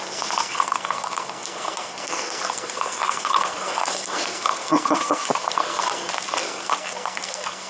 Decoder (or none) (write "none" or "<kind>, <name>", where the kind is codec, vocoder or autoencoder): codec, SNAC